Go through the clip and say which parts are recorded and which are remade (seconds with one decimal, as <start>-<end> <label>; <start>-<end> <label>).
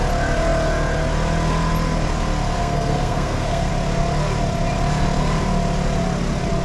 0.0-2.6 recorded; 2.6-3.7 remade; 3.7-6.6 recorded